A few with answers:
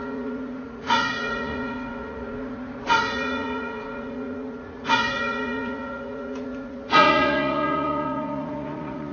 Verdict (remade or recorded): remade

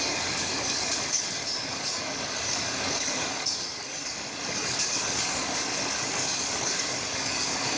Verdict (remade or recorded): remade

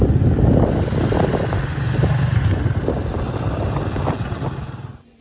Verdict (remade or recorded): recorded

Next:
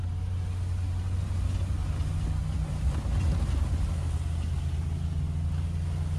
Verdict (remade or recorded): recorded